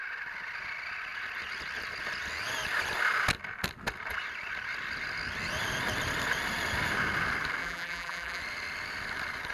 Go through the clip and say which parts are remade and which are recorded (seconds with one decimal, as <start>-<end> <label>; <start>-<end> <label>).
0.0-7.6 recorded; 7.6-8.4 remade; 8.4-9.5 recorded